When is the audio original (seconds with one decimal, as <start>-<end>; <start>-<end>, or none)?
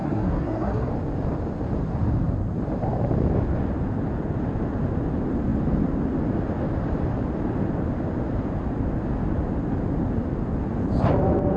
0.9-11.6